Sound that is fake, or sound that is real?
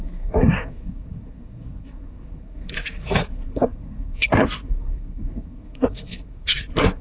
fake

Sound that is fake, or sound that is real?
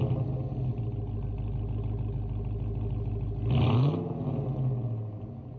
real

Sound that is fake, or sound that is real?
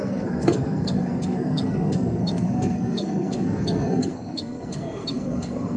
fake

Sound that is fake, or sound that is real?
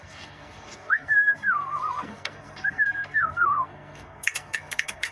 fake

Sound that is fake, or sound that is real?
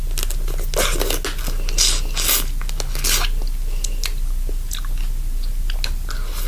real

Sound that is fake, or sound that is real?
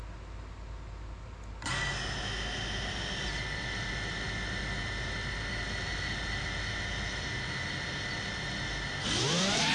real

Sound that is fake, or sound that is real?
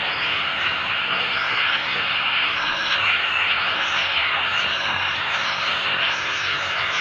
fake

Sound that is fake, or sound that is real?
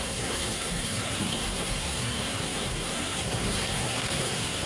fake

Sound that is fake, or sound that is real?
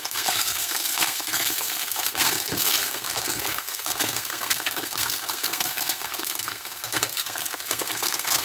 fake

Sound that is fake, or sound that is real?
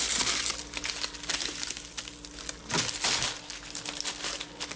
real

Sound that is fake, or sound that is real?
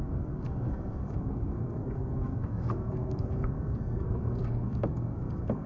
fake